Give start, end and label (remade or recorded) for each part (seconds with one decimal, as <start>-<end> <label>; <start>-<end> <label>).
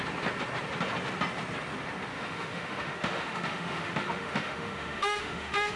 0.0-2.1 recorded; 2.1-5.8 remade